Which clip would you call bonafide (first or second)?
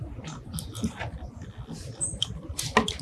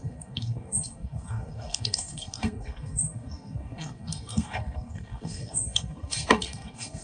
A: first